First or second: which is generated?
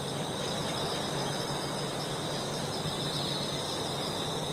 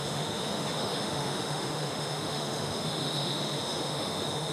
second